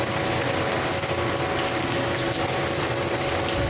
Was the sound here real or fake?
real